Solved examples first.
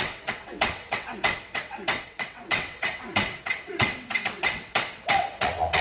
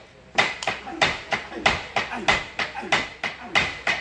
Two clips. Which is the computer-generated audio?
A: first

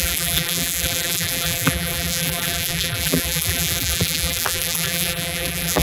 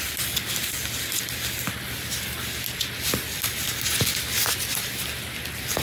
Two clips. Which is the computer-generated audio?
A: first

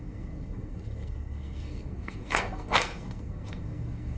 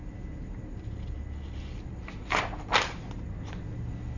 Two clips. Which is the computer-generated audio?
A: first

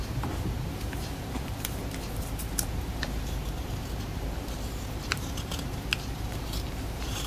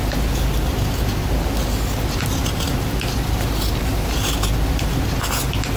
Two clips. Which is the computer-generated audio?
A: first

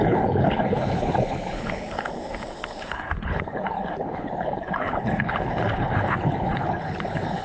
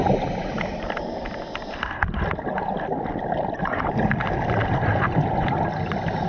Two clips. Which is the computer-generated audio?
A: first